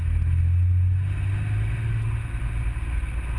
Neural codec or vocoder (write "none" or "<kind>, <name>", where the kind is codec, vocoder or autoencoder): none